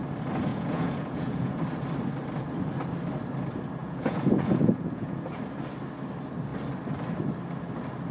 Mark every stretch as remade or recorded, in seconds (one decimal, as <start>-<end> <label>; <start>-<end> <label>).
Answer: 0.0-0.5 recorded; 0.5-1.5 remade; 1.5-3.8 recorded; 3.8-5.4 remade; 5.4-8.1 recorded